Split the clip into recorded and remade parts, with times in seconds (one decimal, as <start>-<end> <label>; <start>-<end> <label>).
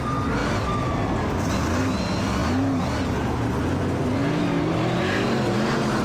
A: 0.0-6.0 recorded